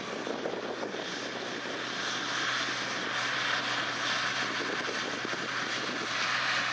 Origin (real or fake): real